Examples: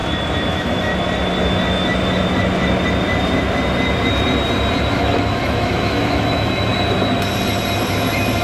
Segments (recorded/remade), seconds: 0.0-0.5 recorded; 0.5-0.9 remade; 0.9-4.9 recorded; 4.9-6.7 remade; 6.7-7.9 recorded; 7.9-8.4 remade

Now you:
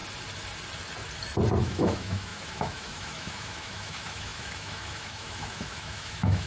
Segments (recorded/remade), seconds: 0.0-1.6 recorded; 1.6-6.5 remade

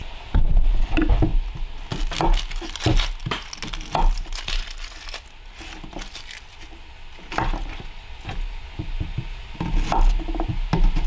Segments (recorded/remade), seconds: 0.0-11.1 recorded

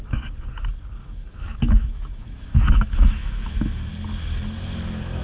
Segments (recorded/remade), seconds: 0.0-1.0 recorded; 1.0-3.9 remade; 3.9-5.2 recorded

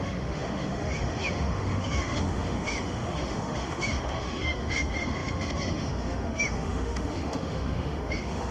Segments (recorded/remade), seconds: 0.0-8.5 remade

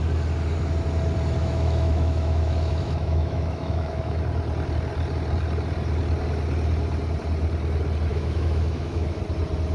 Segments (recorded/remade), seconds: 0.0-1.4 recorded; 1.4-4.2 remade; 4.2-8.1 recorded; 8.1-9.2 remade; 9.2-9.7 recorded

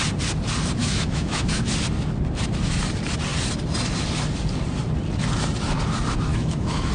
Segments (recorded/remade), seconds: 0.0-0.8 recorded; 0.8-1.7 remade; 1.7-6.3 recorded; 6.3-6.9 remade